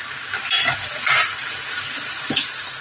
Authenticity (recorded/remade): recorded